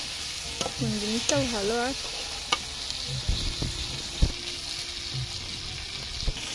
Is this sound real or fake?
real